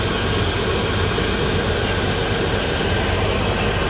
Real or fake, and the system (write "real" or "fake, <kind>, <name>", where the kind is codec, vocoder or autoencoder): real